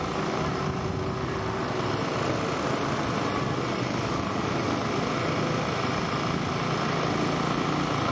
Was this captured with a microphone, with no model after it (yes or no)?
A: yes